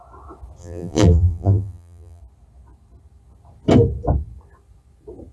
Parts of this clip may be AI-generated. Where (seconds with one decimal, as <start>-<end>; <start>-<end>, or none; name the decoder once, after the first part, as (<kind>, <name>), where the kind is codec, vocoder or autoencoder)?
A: 0.6-2.2 (vocoder, BigVGAN v2)